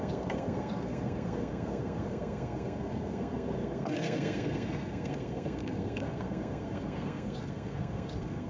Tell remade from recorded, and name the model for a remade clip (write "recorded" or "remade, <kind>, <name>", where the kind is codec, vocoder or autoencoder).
remade, codec, SNAC